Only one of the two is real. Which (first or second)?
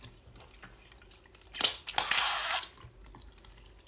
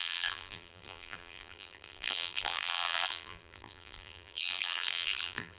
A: first